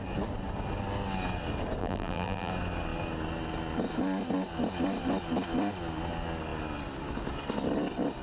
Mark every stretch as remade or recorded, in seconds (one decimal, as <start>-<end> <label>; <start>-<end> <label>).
0.0-1.8 recorded; 1.8-2.5 remade; 2.5-8.2 recorded